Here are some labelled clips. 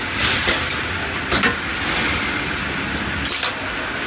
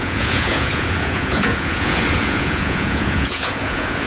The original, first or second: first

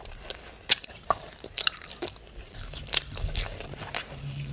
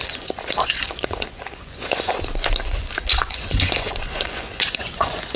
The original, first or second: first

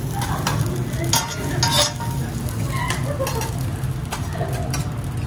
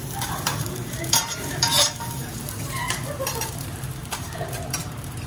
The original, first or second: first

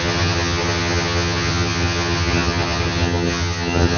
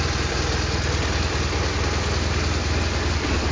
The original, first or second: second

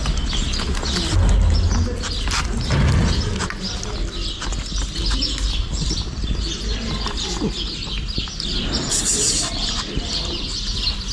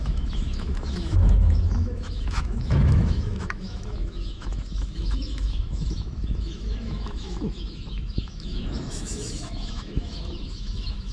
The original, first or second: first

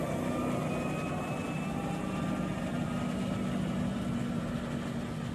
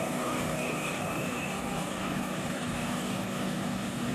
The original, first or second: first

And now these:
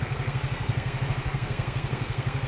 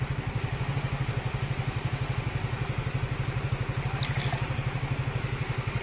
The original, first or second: second